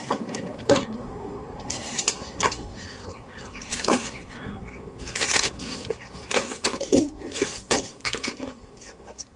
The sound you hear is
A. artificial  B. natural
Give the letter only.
A